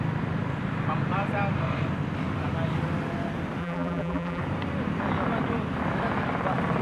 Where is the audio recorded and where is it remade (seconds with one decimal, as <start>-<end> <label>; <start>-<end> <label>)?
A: 0.0-3.6 recorded; 3.6-4.4 remade; 4.4-6.8 recorded